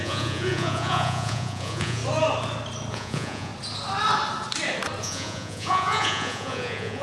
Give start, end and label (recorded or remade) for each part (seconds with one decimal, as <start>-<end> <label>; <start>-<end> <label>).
0.0-2.0 remade; 2.0-2.9 recorded; 2.9-3.5 remade; 3.5-5.0 recorded; 5.0-7.0 remade